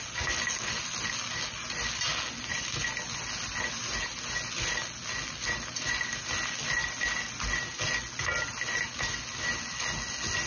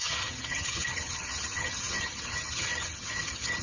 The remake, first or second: second